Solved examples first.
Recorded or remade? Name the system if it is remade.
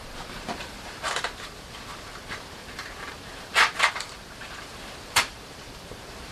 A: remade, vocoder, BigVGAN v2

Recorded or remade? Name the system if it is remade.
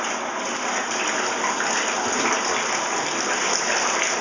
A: recorded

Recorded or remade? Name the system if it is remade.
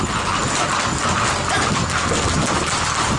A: recorded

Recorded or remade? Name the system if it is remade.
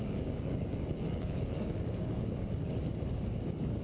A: remade, codec, DAC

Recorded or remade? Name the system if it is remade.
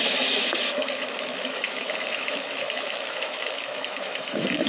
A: remade, autoencoder, DAC-VAE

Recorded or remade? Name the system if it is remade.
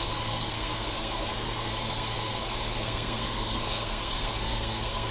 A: remade, codec, SNAC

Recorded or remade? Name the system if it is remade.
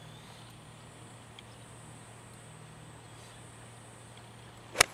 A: recorded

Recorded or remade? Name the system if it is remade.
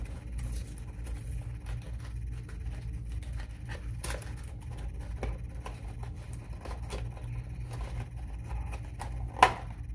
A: recorded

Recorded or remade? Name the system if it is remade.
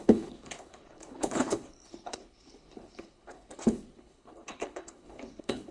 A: remade, codec, HILCodec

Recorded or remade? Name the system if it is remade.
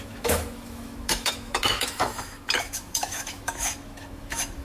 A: remade, autoencoder, DAC-VAE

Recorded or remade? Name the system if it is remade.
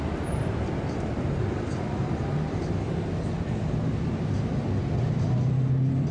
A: recorded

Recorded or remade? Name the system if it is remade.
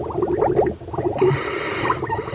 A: recorded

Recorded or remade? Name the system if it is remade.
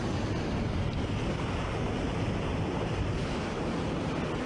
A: recorded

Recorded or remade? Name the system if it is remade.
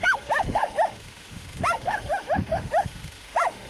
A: remade, autoencoder, DAC-VAE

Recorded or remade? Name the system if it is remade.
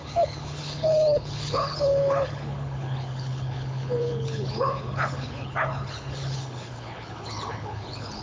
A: remade, codec, HILCodec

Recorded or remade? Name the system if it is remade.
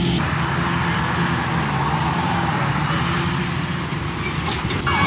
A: recorded